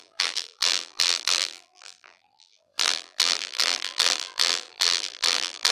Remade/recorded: remade